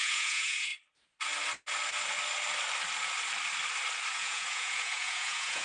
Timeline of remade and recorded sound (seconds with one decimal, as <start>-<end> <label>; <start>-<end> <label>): 0.0-0.7 remade; 0.7-4.1 recorded; 4.1-5.6 remade